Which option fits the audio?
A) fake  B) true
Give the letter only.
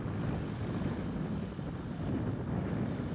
B